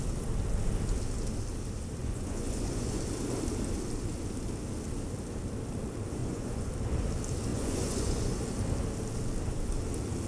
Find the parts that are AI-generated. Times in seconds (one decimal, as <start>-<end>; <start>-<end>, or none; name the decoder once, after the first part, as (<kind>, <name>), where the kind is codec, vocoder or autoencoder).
2.0-3.0 (vocoder, Vocos); 6.2-6.7; 7.5-8.4